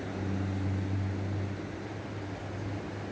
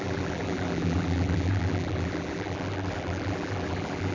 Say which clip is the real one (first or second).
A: first